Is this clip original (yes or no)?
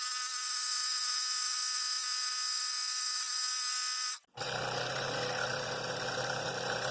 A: yes